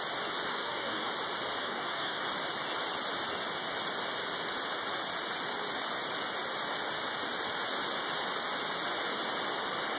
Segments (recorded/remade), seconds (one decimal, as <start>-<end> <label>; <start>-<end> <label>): 0.0-0.5 recorded; 0.5-1.1 remade; 1.1-1.6 recorded; 1.6-2.2 remade; 2.2-10.0 recorded